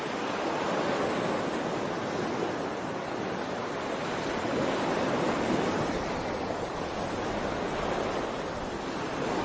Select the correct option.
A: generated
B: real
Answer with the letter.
B